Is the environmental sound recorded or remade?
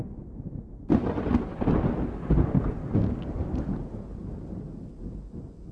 recorded